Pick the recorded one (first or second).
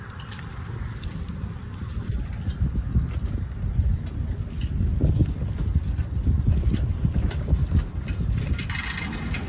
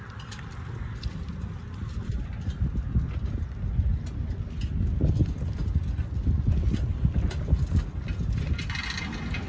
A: second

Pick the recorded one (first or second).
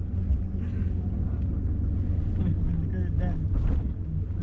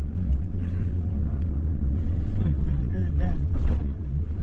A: first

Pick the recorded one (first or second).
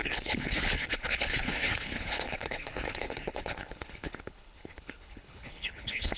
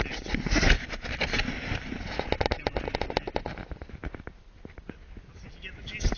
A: second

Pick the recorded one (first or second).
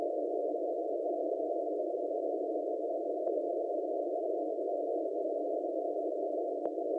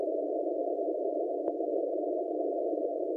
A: first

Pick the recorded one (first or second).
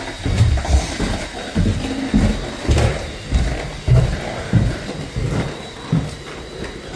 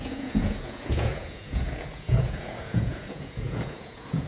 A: first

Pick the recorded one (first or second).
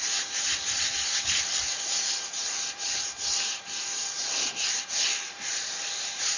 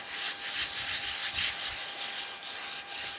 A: second